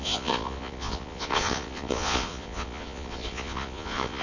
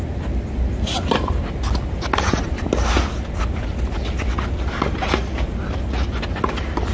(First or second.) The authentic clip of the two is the second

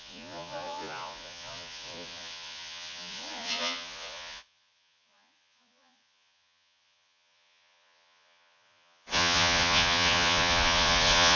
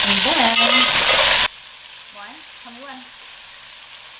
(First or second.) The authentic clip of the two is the second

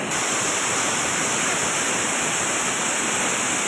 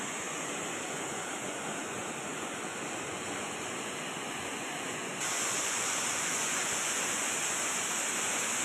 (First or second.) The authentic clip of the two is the first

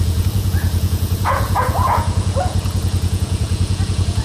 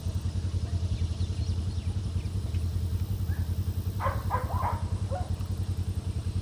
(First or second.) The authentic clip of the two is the second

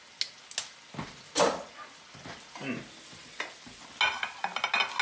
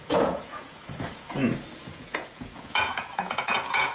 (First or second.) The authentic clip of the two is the first